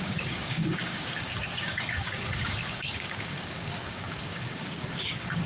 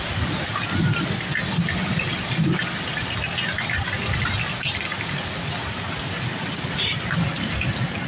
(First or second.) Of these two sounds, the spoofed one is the first